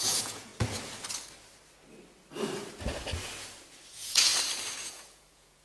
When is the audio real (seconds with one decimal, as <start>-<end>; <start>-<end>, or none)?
0.5-3.9; 4.3-4.8